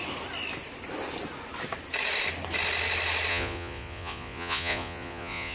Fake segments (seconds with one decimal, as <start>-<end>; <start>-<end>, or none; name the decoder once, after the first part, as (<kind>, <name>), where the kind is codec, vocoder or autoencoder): 3.3-5.5 (vocoder, Vocos)